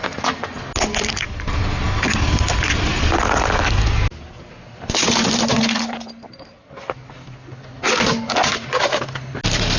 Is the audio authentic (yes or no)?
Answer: yes